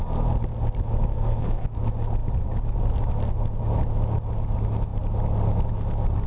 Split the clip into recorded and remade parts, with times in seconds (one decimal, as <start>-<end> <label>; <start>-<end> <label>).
0.0-1.1 recorded; 1.1-1.7 remade; 1.7-6.3 recorded